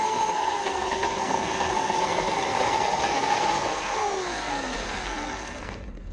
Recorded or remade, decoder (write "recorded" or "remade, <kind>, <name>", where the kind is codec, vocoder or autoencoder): remade, codec, SNAC